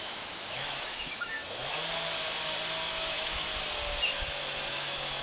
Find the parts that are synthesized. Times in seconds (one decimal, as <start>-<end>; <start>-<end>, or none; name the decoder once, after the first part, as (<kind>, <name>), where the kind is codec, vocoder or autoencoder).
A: 0.0-1.4 (autoencoder, DAC-VAE); 2.9-3.5; 4.7-5.2